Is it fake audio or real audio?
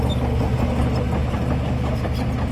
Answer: real